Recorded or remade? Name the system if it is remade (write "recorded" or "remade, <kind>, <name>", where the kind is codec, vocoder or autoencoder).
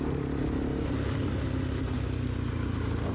recorded